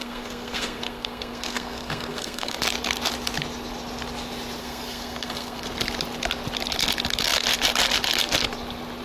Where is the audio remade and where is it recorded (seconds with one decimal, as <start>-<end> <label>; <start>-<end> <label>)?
0.0-2.6 remade; 2.6-4.6 recorded; 4.6-5.7 remade; 5.7-9.0 recorded